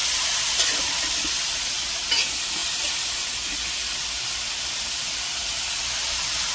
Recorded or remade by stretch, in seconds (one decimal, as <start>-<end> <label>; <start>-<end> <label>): 0.0-6.5 recorded